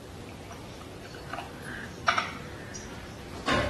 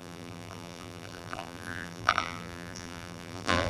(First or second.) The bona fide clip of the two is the first